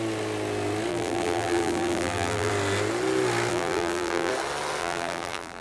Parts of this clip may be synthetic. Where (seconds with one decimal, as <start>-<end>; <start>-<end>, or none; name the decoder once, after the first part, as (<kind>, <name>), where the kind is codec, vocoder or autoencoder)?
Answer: 0.9-2.5 (vocoder, BigVGAN v2); 3.5-4.3; 4.8-5.6